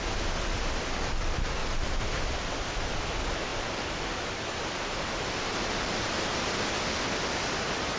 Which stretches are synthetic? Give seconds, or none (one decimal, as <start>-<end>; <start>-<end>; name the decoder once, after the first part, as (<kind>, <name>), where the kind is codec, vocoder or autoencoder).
1.6-2.2 (vocoder, BigVGAN v2); 3.5-6.2